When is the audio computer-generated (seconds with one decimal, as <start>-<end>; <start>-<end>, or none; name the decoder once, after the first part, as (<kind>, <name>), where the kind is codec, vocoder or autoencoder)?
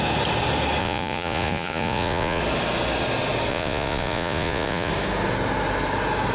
0.8-2.4 (vocoder, Vocos); 3.5-4.9